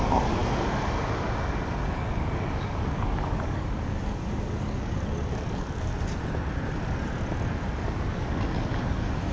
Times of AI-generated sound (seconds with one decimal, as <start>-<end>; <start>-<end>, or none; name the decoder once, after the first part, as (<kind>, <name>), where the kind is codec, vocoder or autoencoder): 0.0-0.4 (codec, DAC); 1.8-5.9; 7.7-9.3